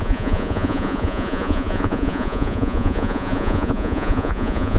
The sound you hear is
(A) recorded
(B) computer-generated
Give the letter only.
B